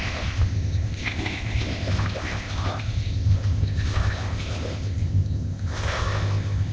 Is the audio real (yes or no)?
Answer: no